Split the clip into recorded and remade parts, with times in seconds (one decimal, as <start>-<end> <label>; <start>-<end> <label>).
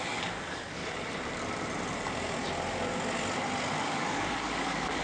0.0-0.8 remade; 0.8-3.8 recorded; 3.8-5.0 remade